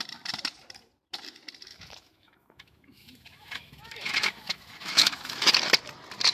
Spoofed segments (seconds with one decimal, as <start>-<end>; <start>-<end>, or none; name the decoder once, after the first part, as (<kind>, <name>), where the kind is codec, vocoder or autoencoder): 1.7-5.5 (autoencoder, DAC-VAE)